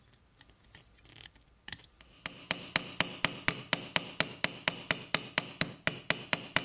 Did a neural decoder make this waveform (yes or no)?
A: no